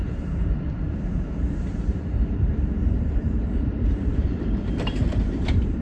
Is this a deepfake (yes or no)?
yes